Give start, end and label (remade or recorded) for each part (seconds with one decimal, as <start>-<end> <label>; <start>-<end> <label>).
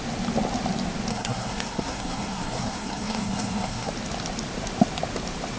0.0-1.1 recorded; 1.1-3.9 remade; 3.9-5.6 recorded